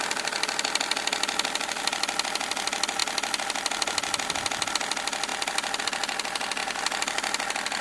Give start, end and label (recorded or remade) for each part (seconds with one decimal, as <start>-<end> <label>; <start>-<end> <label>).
0.0-7.8 recorded